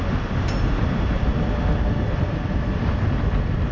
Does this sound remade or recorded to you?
recorded